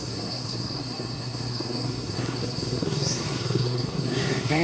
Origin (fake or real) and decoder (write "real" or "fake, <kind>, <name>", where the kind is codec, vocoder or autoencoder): fake, codec, SNAC